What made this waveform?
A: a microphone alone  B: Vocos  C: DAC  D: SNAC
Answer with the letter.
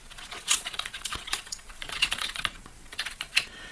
B